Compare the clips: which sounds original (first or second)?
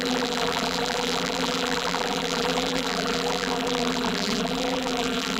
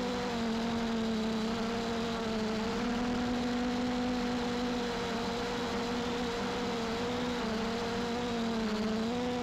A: second